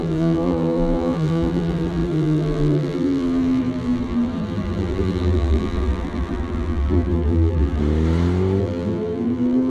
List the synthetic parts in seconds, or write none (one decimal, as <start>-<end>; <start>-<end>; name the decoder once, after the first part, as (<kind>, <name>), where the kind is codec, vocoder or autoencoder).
0.0-7.8 (vocoder, BigVGAN v2); 8.6-9.7